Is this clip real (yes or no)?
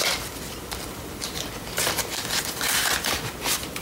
no